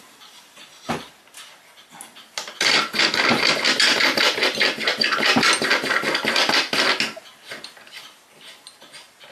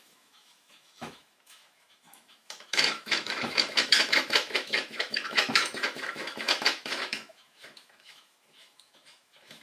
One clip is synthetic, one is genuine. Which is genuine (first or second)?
first